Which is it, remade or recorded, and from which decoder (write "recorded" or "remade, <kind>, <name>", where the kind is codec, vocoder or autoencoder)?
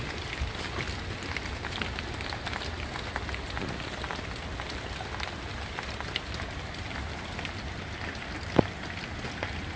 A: recorded